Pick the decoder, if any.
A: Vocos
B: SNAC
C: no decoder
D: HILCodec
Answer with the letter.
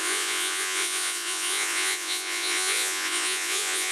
A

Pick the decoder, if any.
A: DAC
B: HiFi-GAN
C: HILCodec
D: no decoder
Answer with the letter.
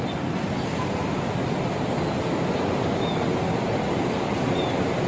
D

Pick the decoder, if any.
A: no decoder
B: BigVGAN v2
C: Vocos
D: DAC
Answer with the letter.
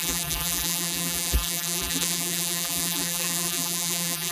B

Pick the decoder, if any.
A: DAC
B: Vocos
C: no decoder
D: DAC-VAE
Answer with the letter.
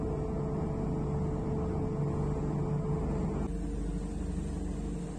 C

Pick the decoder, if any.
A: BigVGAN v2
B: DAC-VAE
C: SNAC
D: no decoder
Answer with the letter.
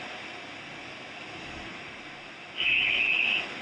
D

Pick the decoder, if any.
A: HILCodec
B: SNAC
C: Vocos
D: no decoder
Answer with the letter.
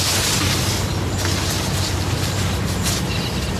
D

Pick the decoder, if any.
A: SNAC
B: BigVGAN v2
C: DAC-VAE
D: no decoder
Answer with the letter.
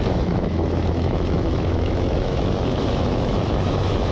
C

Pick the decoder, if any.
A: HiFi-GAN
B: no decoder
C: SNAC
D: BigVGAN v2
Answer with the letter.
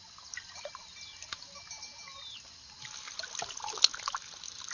B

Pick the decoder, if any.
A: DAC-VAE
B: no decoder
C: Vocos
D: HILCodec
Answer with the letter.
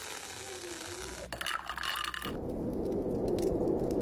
B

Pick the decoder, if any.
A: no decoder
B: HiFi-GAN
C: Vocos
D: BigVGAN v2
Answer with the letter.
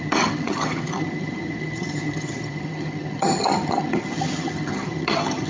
B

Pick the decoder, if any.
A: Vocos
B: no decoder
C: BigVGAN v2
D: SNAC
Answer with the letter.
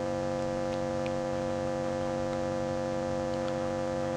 B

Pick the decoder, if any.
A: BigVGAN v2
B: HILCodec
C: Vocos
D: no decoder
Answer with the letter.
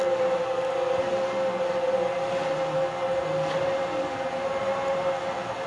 D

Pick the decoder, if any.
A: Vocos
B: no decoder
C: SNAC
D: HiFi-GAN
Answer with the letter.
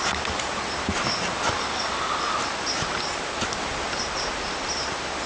B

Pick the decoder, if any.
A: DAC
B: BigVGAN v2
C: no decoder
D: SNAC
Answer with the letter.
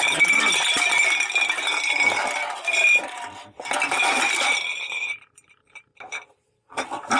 B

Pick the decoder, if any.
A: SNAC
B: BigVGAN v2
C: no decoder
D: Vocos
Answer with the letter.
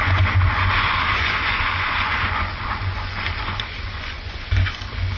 D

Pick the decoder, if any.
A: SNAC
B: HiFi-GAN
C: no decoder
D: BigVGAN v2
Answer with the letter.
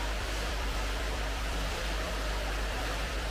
D